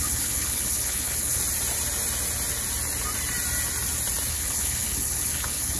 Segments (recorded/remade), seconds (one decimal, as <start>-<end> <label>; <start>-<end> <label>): 0.0-1.4 remade; 1.4-4.3 recorded; 4.3-5.8 remade